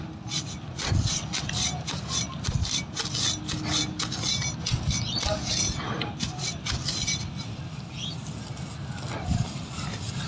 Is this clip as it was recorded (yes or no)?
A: yes